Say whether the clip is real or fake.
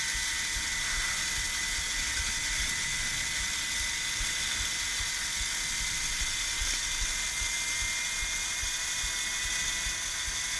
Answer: real